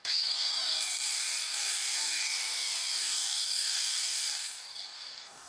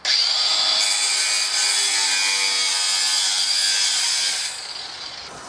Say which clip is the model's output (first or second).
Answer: first